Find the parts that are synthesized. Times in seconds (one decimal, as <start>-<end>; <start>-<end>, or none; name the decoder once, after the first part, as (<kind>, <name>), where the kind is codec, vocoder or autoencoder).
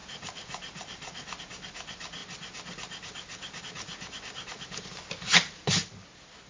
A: none